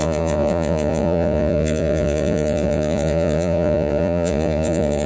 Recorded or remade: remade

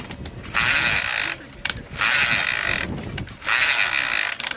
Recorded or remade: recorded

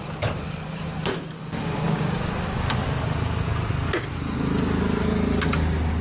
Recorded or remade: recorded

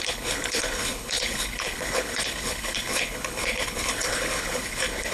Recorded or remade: remade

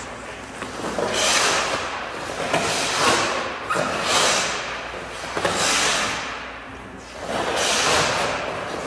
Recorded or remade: recorded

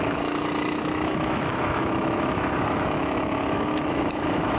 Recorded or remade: remade